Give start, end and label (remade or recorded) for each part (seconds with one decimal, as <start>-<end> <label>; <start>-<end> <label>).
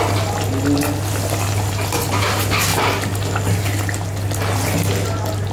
0.0-5.5 recorded